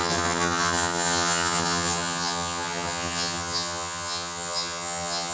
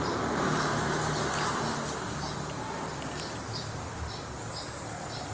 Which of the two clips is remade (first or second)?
first